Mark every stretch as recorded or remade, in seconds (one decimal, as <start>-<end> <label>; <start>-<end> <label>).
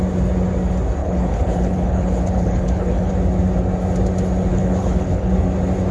0.0-1.0 recorded; 1.0-3.1 remade; 3.1-4.5 recorded; 4.5-5.3 remade; 5.3-5.9 recorded